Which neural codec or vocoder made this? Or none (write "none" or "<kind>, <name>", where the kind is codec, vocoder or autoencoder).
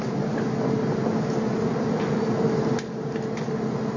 none